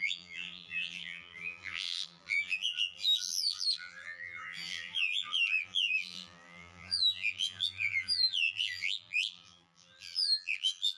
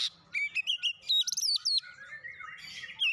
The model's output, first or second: first